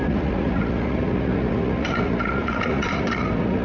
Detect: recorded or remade remade